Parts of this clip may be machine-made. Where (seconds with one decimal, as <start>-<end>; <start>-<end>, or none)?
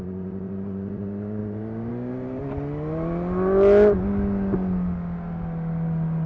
0.0-2.4